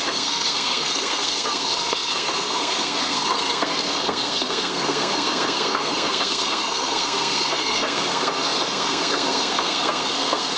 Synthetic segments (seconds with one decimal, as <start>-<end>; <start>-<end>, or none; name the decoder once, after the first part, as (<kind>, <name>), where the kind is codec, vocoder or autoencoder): 0.0-10.6 (codec, SNAC)